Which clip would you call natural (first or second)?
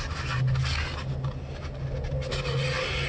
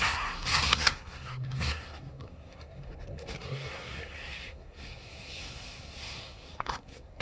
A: first